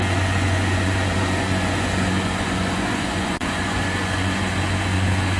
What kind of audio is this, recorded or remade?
remade